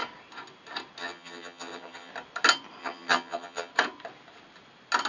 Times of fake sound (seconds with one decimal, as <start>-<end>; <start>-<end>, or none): 1.0-2.1; 2.8-3.7